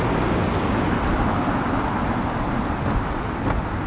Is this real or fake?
real